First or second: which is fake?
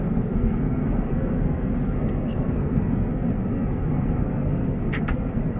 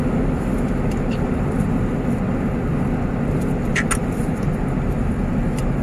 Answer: first